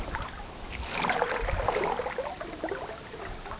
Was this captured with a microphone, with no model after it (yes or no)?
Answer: yes